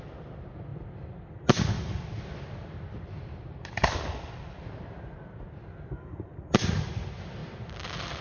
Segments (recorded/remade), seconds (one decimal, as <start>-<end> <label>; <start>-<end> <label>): 0.0-7.4 recorded; 7.4-8.2 remade